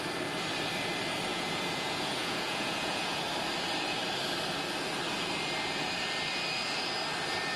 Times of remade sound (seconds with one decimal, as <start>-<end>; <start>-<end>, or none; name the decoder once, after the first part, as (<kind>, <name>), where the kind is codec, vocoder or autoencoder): 1.3-3.2 (vocoder, Vocos)